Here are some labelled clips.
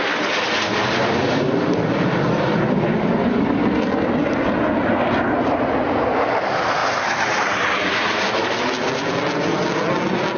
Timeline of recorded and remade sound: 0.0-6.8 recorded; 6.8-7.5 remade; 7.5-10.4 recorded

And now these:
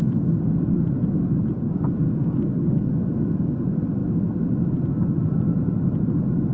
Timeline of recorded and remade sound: 0.0-1.2 recorded; 1.2-2.9 remade; 2.9-6.5 recorded